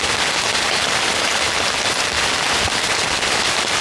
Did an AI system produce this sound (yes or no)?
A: no